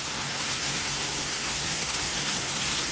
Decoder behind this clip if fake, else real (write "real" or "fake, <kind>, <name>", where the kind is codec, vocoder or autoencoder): fake, codec, SNAC